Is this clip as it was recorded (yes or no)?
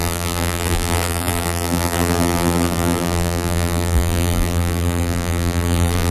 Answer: no